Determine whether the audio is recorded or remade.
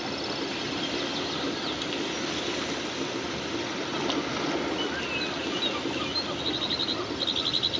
recorded